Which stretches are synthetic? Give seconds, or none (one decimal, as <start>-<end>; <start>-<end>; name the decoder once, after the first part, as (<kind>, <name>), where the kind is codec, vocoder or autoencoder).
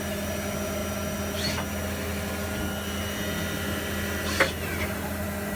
none